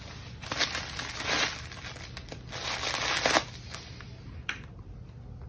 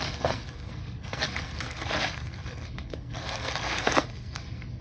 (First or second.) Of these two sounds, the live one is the first